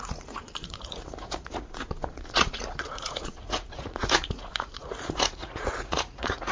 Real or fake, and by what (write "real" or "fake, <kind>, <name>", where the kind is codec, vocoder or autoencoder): fake, vocoder, Vocos